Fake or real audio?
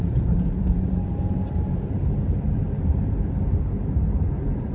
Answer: fake